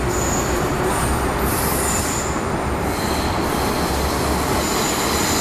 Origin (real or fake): real